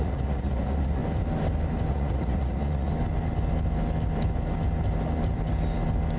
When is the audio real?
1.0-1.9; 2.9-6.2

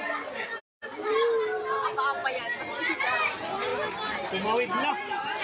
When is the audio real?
0.0-5.4